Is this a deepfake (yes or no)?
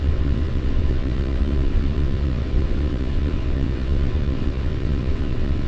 yes